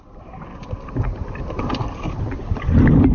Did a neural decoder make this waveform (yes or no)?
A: no